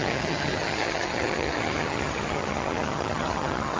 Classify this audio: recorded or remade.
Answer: remade